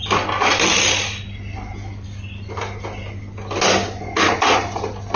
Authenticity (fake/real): real